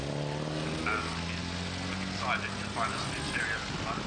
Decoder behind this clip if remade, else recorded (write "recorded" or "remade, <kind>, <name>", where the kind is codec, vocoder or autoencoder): recorded